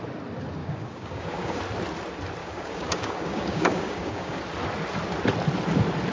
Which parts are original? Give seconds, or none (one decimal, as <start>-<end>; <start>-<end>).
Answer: 0.0-0.6; 1.6-2.4; 4.4-6.1